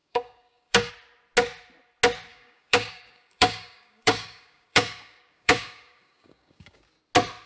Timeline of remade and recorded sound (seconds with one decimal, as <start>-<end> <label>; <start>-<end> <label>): 0.0-0.9 remade; 0.9-2.3 recorded; 2.3-6.8 remade; 6.8-7.5 recorded